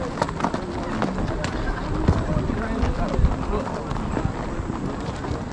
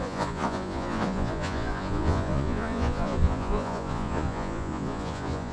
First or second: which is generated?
second